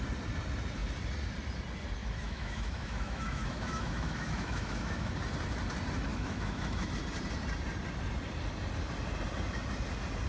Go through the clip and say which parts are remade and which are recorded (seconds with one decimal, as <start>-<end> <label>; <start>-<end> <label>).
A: 0.0-2.0 recorded; 2.0-5.1 remade; 5.1-6.1 recorded; 6.1-6.9 remade; 6.9-10.3 recorded